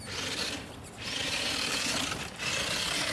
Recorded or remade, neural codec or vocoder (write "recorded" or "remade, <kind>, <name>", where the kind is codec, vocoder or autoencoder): recorded